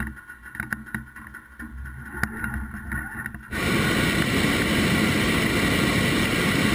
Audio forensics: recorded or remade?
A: recorded